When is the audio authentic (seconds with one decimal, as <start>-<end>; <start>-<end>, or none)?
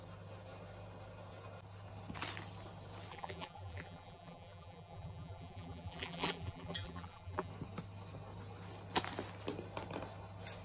0.0-3.1; 7.5-10.6